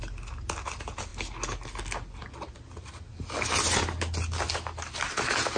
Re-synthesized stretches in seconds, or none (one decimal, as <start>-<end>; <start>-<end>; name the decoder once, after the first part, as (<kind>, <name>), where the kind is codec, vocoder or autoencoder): none